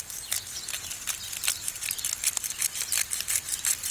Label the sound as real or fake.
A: real